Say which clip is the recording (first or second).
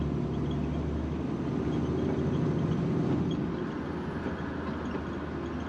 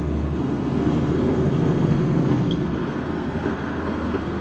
first